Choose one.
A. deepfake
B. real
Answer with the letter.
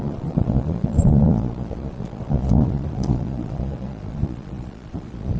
A